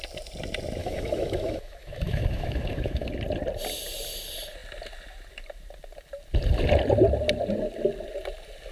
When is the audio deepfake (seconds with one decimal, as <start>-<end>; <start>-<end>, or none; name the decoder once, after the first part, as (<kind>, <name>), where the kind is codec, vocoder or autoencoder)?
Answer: 0.8-3.1 (autoencoder, DAC-VAE)